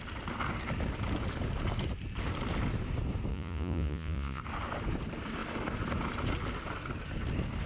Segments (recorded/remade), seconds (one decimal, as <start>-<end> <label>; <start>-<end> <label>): 0.0-3.3 recorded; 3.3-4.4 remade; 4.4-7.7 recorded